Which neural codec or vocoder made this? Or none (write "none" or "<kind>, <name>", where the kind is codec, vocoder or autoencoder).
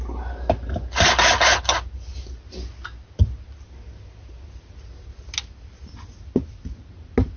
none